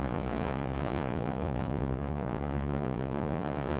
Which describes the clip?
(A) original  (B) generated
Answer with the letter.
B